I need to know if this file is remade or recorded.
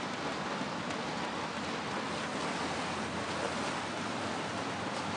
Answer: recorded